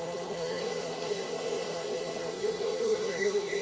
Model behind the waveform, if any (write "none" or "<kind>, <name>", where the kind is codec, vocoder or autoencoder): codec, SNAC